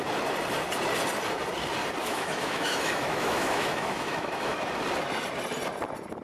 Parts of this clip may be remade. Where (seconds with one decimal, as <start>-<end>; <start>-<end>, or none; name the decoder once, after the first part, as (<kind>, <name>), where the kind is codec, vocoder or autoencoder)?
2.0-4.6 (autoencoder, DAC-VAE)